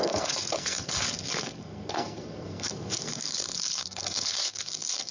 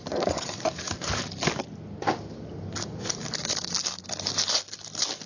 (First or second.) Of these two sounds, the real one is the second